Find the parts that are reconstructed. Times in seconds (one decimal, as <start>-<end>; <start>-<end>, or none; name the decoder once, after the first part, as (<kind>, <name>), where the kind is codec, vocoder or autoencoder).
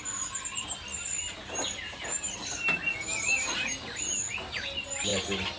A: none